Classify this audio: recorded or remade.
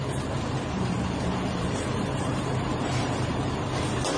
remade